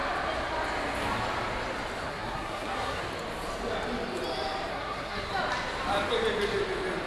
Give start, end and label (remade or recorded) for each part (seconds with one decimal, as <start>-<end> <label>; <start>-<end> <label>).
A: 0.0-2.1 recorded; 2.1-3.0 remade; 3.0-4.7 recorded; 4.7-5.3 remade; 5.3-7.1 recorded